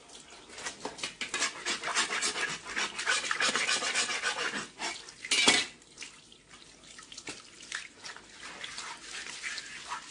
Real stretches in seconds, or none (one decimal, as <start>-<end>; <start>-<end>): 0.0-10.1